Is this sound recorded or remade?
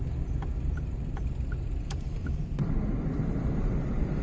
remade